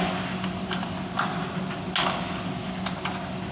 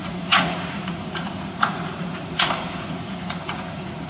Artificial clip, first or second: second